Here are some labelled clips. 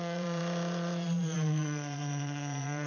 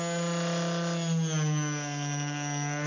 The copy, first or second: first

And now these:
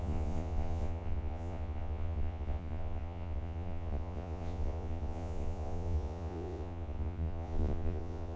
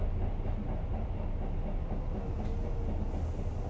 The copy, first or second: first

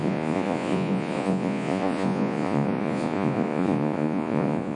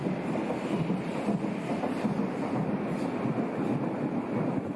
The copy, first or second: first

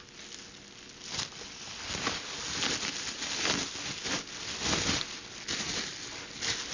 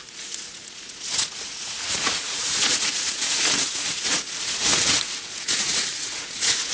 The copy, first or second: second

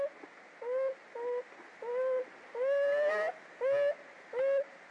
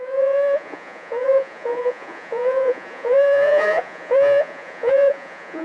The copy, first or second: second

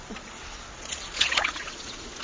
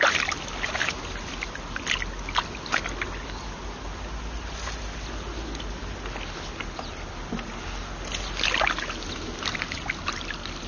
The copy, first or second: first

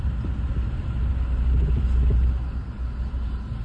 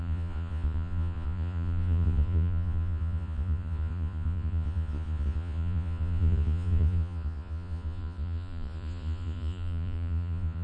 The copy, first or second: second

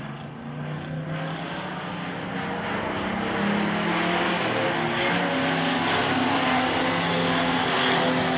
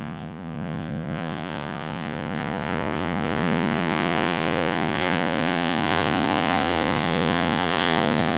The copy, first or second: second